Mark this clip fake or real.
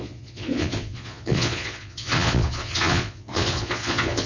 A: fake